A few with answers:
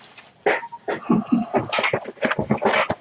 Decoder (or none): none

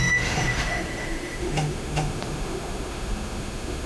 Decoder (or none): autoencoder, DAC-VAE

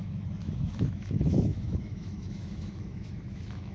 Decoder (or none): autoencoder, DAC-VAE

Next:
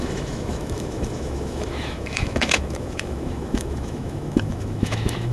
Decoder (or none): autoencoder, DAC-VAE